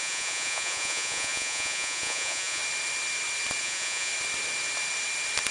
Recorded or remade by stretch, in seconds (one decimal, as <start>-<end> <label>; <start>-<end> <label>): 0.0-2.6 remade; 2.6-3.6 recorded; 3.6-4.1 remade; 4.1-5.5 recorded